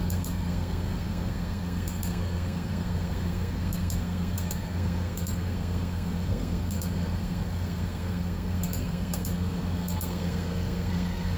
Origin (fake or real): fake